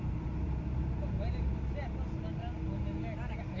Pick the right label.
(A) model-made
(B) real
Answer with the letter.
B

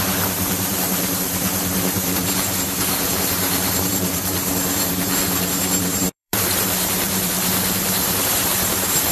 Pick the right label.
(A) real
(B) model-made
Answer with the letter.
B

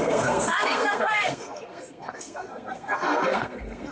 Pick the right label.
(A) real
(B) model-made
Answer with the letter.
B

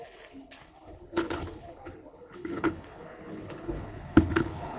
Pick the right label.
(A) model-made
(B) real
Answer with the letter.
A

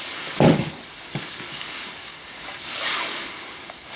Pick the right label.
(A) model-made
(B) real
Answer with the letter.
A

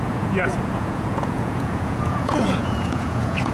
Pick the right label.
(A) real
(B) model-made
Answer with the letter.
B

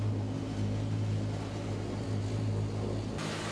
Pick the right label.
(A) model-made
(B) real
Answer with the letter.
B